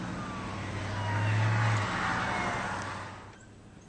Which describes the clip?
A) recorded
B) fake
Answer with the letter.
A